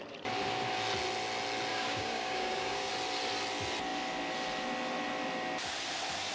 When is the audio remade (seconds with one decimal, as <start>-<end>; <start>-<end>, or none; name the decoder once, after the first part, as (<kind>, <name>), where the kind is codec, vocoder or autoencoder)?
1.7-2.9 (codec, DAC)